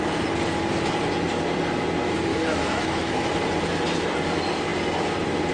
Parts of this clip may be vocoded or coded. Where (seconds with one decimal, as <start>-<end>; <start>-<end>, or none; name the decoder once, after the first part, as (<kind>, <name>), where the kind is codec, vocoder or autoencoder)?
2.3-3.3 (autoencoder, DAC-VAE)

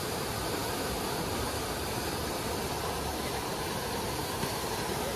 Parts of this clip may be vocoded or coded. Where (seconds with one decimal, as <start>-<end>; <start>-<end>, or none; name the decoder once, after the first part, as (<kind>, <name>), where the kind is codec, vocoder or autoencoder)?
none

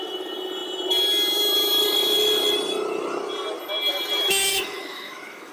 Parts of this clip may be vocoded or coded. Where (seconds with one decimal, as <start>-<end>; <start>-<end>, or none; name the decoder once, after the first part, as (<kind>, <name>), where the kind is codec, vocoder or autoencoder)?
4.5-5.5 (autoencoder, DAC-VAE)

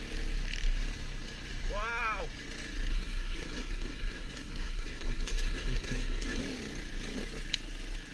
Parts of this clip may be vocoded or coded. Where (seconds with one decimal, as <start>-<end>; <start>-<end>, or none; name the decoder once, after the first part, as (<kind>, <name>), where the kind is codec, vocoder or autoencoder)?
2.9-6.4 (codec, SNAC)

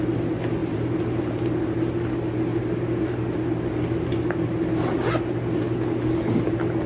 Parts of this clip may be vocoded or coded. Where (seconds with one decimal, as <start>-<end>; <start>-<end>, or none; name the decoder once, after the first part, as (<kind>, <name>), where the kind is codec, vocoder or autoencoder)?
0.6-1.2 (vocoder, BigVGAN v2)

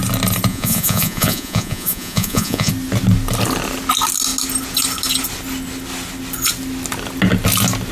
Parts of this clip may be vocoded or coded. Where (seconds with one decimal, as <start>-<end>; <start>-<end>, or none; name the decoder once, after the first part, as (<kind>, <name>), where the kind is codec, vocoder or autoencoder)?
0.5-2.7 (vocoder, Vocos)